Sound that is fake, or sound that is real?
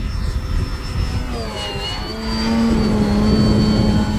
real